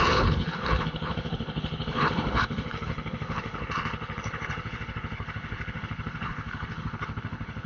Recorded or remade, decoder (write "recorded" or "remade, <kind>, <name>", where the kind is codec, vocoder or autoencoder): remade, codec, HILCodec